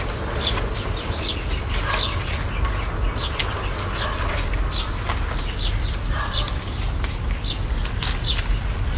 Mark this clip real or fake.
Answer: real